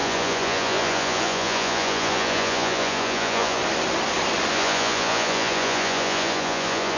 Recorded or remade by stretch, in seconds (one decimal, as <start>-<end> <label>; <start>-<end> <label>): 0.0-3.6 remade; 3.6-4.5 recorded; 4.5-7.0 remade